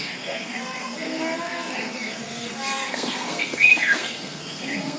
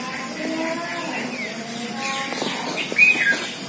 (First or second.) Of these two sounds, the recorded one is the second